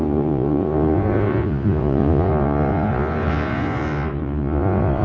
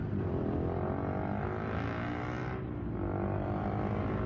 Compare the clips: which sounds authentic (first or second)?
second